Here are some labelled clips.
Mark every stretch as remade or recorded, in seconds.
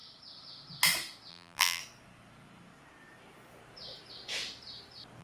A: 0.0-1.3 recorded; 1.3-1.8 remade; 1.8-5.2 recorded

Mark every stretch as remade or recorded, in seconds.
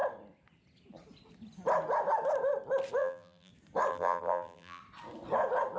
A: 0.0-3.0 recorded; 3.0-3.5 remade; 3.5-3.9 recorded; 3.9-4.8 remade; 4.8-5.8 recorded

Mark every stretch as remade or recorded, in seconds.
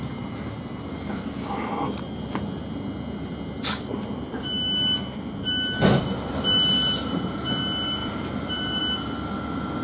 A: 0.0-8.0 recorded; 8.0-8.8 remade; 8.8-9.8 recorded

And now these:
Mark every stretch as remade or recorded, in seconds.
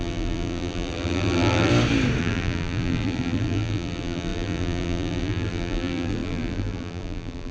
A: 0.0-1.7 remade; 1.7-2.2 recorded; 2.2-7.5 remade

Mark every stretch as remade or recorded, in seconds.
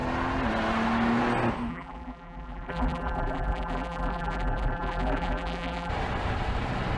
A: 0.0-1.7 recorded; 1.7-5.9 remade; 5.9-7.0 recorded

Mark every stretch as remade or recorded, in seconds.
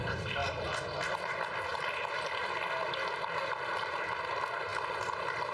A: 0.0-0.4 recorded; 0.4-1.1 remade; 1.1-1.7 recorded; 1.7-2.4 remade; 2.4-4.7 recorded; 4.7-5.5 remade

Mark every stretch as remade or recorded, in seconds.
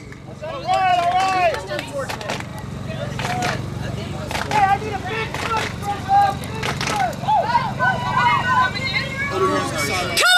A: 0.0-0.9 recorded; 0.9-2.1 remade; 2.1-2.5 recorded; 2.5-4.4 remade; 4.4-5.3 recorded; 5.3-6.3 remade; 6.3-7.7 recorded; 7.7-9.4 remade; 9.4-10.4 recorded